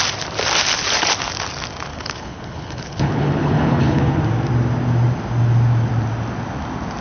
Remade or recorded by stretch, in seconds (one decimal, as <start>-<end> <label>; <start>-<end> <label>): 0.0-1.9 recorded; 1.9-4.2 remade; 4.2-7.0 recorded